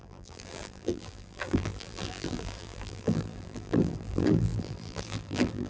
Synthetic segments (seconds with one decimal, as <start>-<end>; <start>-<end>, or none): 0.0-5.7